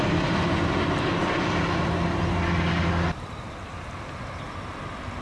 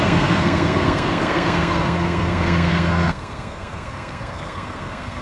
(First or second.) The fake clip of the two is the second